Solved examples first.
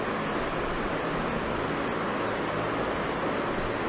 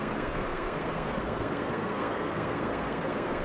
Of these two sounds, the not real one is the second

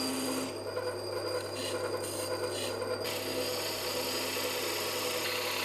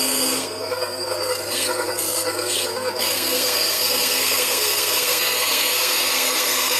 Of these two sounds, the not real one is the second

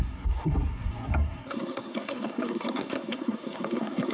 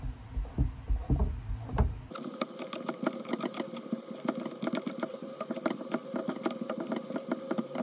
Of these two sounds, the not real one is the first